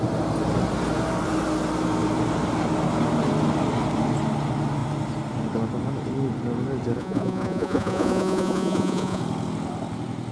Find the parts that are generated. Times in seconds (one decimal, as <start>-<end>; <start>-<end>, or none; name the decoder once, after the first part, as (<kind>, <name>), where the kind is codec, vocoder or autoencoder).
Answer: 7.0-9.2 (vocoder, Vocos)